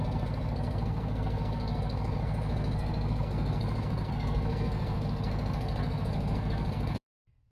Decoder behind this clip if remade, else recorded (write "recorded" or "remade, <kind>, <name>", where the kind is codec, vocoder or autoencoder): remade, codec, SNAC